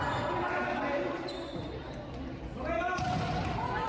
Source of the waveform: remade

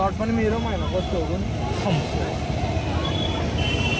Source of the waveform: recorded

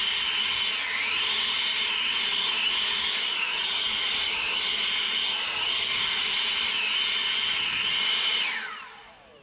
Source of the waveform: recorded